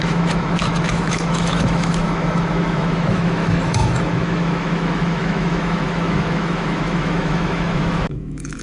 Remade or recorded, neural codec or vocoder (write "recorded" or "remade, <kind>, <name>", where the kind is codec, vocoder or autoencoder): remade, autoencoder, DAC-VAE